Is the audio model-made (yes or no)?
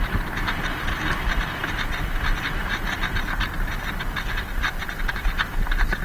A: yes